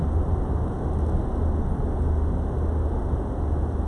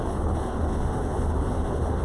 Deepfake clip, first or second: second